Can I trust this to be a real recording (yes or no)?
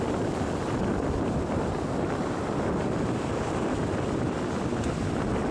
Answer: yes